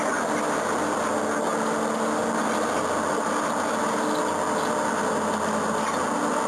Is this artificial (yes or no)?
no